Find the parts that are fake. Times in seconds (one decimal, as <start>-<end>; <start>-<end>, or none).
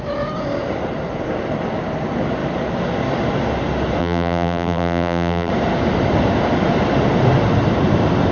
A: 4.0-5.5